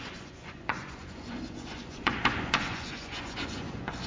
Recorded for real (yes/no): no